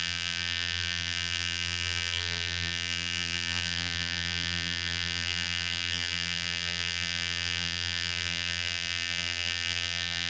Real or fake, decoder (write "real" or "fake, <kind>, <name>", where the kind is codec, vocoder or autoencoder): fake, vocoder, BigVGAN v2